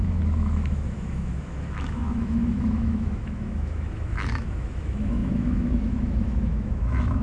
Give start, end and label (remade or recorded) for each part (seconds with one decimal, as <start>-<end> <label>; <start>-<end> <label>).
0.0-7.2 remade